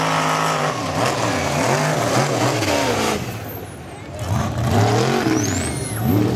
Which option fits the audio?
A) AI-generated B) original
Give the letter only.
B